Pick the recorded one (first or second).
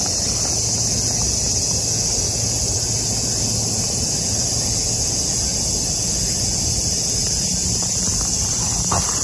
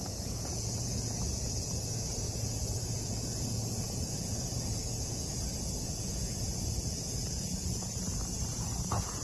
first